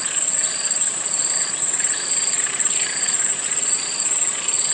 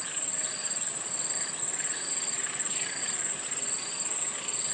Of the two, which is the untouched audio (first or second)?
second